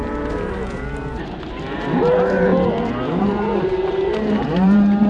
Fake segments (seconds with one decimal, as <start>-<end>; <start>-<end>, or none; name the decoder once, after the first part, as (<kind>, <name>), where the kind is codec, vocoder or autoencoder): 0.0-2.5 (vocoder, BigVGAN v2); 3.2-5.1